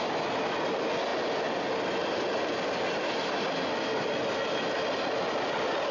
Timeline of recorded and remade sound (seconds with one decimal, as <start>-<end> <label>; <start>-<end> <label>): 0.0-5.9 recorded